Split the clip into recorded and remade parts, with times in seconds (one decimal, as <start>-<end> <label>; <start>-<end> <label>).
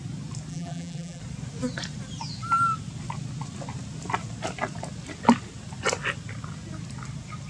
0.0-0.5 recorded; 0.5-1.2 remade; 1.2-7.5 recorded